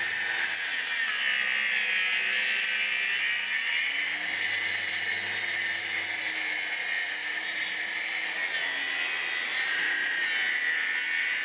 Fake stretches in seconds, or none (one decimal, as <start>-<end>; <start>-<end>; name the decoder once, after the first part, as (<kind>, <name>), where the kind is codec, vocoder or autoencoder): 7.2-7.8 (vocoder, BigVGAN v2); 9.5-10.1